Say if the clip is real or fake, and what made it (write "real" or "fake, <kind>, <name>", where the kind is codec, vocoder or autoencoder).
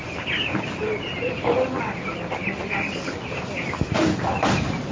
real